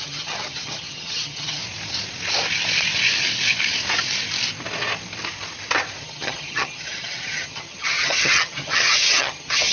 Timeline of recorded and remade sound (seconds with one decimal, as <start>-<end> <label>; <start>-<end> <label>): 0.0-1.6 remade; 1.6-6.0 recorded; 6.0-9.7 remade